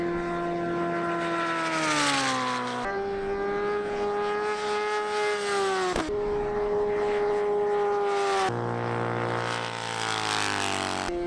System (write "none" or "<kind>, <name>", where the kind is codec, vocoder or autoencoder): none